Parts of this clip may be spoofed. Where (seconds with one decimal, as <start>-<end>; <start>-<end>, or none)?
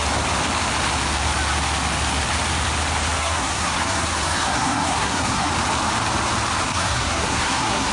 3.2-5.5; 6.7-7.9